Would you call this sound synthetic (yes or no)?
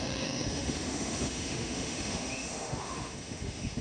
yes